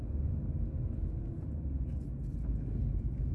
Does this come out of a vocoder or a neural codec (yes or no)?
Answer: no